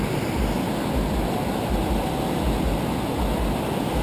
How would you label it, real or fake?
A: real